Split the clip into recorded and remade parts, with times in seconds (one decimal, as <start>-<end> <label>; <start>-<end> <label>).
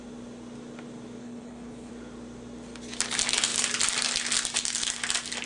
0.0-1.2 recorded; 1.2-1.9 remade; 1.9-5.5 recorded